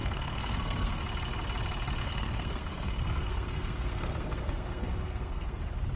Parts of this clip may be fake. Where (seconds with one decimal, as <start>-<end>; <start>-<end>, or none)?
0.0-1.0; 2.0-5.6